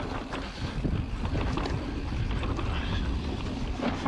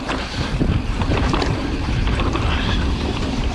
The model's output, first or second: second